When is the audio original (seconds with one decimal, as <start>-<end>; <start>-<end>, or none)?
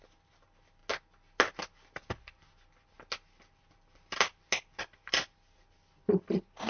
0.0-6.7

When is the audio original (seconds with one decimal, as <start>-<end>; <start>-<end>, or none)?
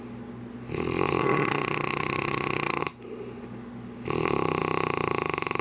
0.0-1.2; 2.8-5.6